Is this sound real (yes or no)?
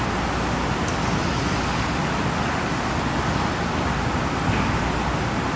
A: yes